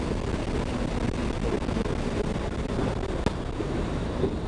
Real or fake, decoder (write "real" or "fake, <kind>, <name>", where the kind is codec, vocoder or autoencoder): real